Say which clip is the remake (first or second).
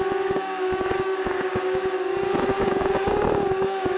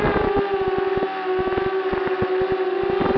first